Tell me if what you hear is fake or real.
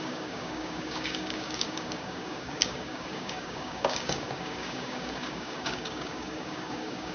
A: fake